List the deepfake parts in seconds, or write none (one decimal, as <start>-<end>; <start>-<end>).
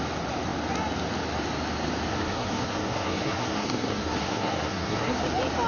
2.1-5.2